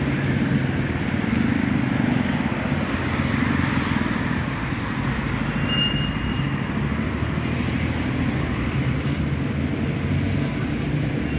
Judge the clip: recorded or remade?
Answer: recorded